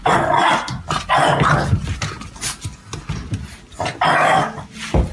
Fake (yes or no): no